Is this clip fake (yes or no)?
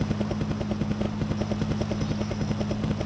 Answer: no